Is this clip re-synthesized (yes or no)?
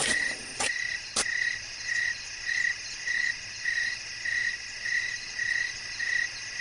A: no